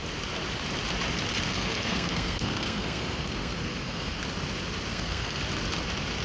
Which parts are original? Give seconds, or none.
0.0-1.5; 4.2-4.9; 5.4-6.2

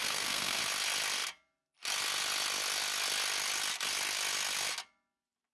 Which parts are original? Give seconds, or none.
0.6-5.5

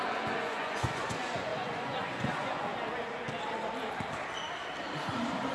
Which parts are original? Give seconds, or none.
2.7-5.5

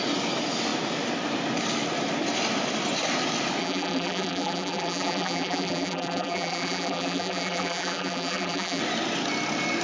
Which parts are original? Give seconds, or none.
0.0-3.6; 8.8-9.8

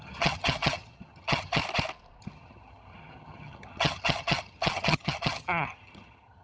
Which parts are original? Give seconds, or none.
1.6-2.2

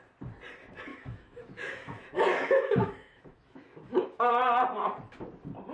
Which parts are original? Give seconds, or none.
0.0-0.9; 4.3-5.7

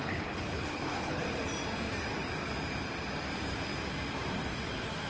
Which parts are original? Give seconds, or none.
1.2-5.1

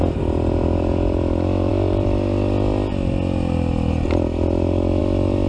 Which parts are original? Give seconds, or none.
0.0-5.5